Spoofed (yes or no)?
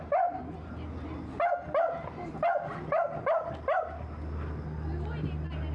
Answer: no